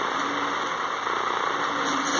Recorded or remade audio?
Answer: recorded